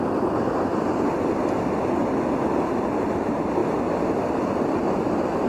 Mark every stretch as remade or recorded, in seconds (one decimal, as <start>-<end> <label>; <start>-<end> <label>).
0.0-5.5 recorded